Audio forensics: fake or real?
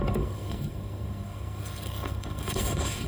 fake